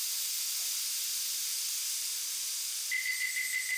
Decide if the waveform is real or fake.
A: real